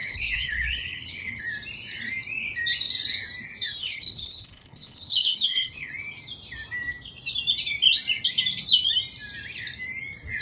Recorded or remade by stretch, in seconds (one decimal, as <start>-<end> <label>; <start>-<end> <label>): 0.0-1.4 remade; 1.4-3.8 recorded; 3.8-5.9 remade; 5.9-10.4 recorded